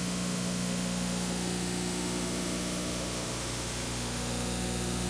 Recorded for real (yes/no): no